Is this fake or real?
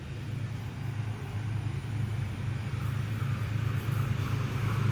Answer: real